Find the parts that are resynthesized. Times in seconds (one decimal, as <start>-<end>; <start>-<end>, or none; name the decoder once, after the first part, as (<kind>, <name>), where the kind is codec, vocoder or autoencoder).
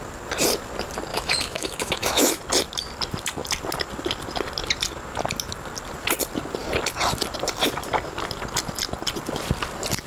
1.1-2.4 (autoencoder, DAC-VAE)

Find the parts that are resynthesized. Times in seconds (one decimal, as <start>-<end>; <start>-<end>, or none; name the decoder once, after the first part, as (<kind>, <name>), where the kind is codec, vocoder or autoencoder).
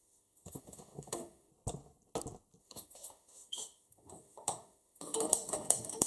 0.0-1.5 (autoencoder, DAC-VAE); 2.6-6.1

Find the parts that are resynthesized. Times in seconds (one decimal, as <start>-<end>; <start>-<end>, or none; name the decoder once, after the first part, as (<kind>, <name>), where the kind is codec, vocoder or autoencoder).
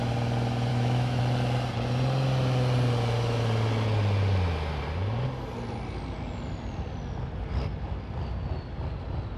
0.7-1.2 (autoencoder, DAC-VAE)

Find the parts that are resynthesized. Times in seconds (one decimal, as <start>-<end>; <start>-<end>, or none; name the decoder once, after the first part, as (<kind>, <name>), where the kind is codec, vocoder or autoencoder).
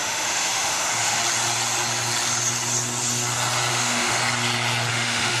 0.0-1.2 (autoencoder, DAC-VAE); 3.7-4.2; 4.9-5.4